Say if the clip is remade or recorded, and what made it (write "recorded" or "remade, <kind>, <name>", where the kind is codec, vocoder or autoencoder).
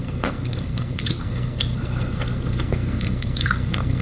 remade, codec, SNAC